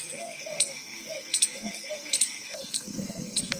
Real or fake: fake